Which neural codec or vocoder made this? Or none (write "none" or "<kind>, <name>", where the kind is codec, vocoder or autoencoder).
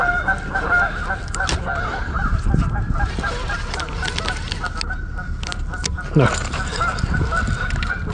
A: none